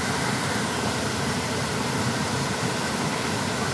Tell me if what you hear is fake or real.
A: real